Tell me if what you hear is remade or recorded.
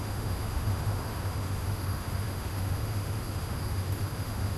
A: remade